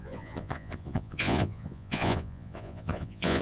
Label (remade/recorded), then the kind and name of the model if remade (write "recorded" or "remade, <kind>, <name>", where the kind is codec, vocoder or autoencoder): remade, vocoder, Vocos